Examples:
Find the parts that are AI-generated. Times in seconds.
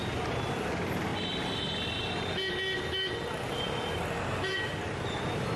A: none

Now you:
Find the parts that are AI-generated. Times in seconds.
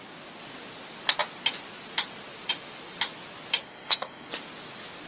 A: 3.6-4.3 (codec, ZipCodec)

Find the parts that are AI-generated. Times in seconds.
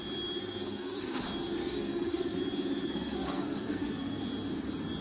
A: 0.4-1.2 (codec, SNAC); 1.6-2.4; 2.8-4.2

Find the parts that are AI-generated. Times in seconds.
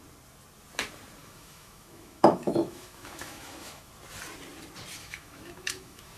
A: 1.2-3.9 (autoencoder, DAC-VAE); 5.0-6.2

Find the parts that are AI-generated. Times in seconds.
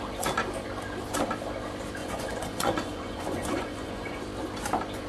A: 2.0-4.2 (vocoder, Vocos)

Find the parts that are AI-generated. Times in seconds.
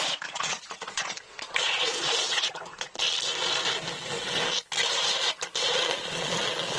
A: 0.0-3.0 (vocoder, Vocos); 5.6-6.8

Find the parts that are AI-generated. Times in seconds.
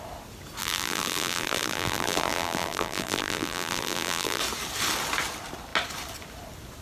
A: 0.6-4.4 (vocoder, BigVGAN v2)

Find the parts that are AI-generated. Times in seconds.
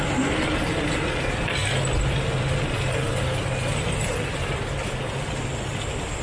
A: none